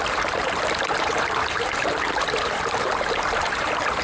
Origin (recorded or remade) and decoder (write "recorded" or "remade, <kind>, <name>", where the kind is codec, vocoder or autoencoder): remade, vocoder, BigVGAN v2